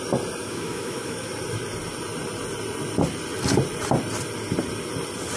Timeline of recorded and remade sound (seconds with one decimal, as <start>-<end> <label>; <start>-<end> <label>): 0.0-0.4 recorded; 0.4-1.3 remade; 1.3-5.4 recorded